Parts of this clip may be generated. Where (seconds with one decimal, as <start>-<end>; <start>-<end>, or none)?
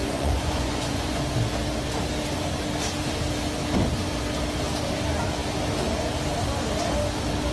0.0-1.2